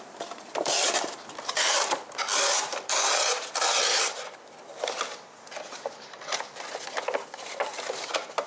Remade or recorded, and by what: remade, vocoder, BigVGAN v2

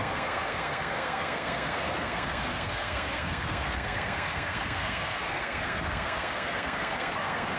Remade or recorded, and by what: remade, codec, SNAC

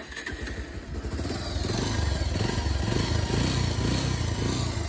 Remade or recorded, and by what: recorded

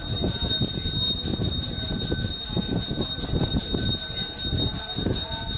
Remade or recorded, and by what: recorded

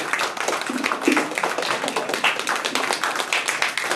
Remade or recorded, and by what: recorded